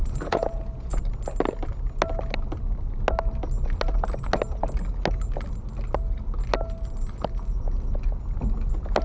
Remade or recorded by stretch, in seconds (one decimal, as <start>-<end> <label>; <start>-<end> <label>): 0.0-1.0 remade; 1.0-9.0 recorded